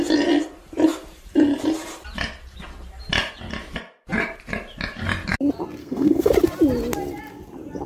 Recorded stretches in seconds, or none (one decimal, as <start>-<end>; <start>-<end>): 0.0-5.8; 6.3-7.9